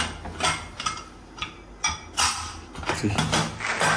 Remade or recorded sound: recorded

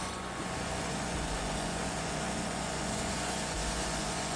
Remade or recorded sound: remade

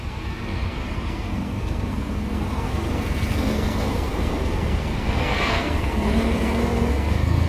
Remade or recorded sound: remade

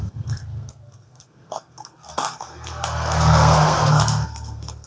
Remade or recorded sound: remade